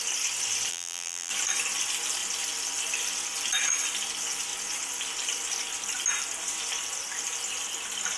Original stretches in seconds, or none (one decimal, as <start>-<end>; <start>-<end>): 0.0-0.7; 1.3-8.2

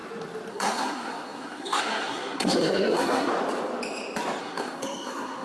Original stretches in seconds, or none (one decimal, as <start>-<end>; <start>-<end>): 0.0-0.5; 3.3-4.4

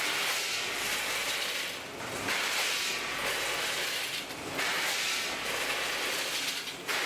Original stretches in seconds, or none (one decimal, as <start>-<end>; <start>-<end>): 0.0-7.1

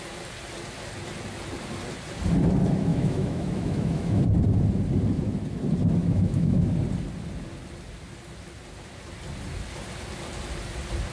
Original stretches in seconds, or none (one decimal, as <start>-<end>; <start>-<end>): 0.0-2.9; 4.2-6.0; 6.7-11.1

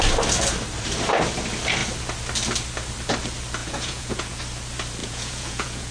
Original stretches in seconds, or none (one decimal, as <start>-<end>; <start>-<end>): 0.0-3.6; 4.4-5.0

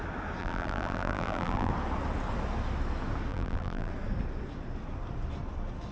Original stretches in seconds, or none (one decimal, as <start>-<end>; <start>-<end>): 0.0-0.4; 1.7-3.3; 3.9-5.9

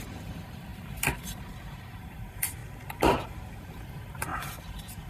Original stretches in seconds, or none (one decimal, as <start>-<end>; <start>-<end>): 2.6-3.6